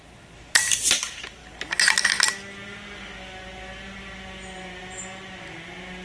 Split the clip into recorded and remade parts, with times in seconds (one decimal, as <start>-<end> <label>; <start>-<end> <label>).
0.0-6.0 recorded